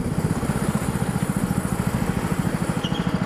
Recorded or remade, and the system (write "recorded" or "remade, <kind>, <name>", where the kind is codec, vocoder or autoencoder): recorded